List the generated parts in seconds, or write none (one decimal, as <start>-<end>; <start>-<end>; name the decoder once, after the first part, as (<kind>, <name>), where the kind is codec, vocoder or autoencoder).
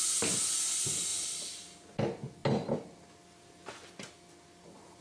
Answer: none